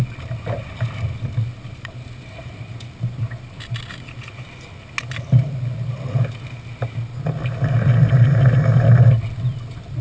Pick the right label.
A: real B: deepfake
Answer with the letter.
A